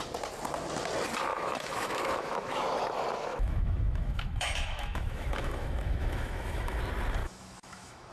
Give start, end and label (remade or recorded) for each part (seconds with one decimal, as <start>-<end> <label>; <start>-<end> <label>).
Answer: 0.0-1.3 recorded; 1.3-2.6 remade; 2.6-3.3 recorded; 3.3-6.8 remade; 6.8-7.2 recorded; 7.2-8.1 remade